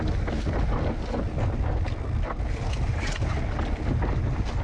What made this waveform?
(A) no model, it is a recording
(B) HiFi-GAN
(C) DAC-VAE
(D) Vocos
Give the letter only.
A